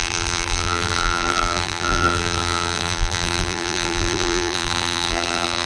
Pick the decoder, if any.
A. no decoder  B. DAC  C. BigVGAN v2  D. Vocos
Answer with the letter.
C